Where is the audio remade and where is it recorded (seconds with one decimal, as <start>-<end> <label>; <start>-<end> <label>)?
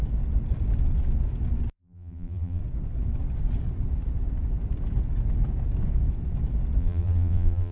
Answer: 0.0-1.7 recorded; 1.7-2.6 remade; 2.6-6.8 recorded; 6.8-7.7 remade